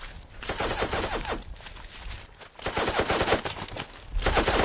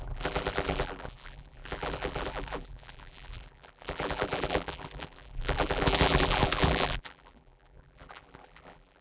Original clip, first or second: first